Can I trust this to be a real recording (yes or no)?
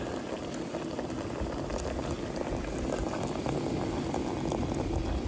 yes